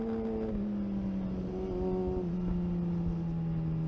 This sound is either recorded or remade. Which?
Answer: recorded